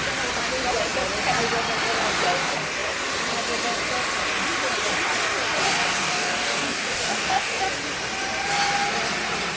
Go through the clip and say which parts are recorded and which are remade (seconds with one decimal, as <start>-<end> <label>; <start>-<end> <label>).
0.0-6.0 recorded; 6.0-7.6 remade; 7.6-9.6 recorded